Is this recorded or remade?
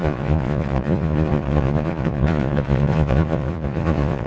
remade